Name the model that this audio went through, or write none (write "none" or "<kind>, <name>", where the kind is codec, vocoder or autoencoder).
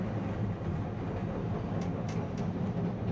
none